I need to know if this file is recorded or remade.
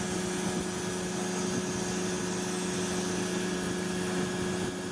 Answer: recorded